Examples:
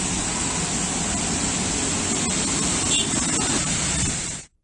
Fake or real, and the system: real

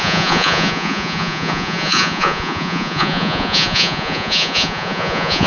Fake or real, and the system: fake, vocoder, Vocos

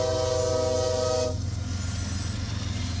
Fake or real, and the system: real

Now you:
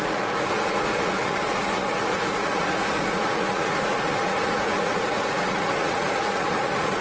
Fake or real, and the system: fake, vocoder, Vocos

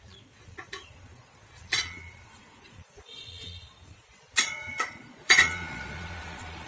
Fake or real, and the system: fake, vocoder, Vocos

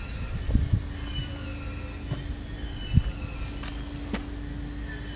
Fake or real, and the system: real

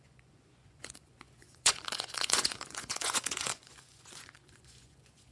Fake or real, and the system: fake, vocoder, Vocos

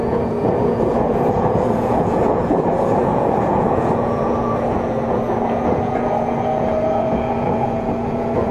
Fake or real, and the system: fake, vocoder, Vocos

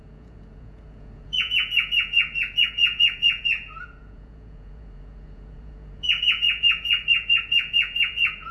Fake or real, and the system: fake, vocoder, Vocos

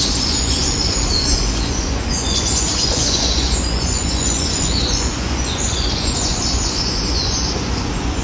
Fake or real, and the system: fake, vocoder, Vocos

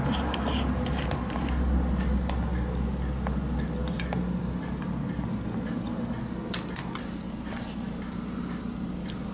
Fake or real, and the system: real